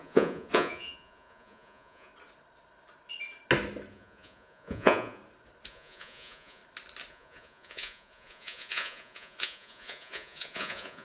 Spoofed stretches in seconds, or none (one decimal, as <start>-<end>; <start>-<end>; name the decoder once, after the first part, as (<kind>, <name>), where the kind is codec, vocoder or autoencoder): 0.0-2.1 (vocoder, Vocos); 3.9-5.2; 5.7-6.6; 7.1-11.0